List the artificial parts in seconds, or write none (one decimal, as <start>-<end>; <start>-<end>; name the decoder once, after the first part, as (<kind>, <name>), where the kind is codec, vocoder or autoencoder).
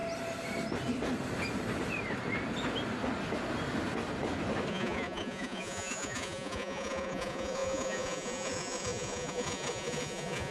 4.7-10.5 (vocoder, Vocos)